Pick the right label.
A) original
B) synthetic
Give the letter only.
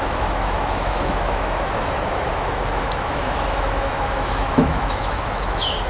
B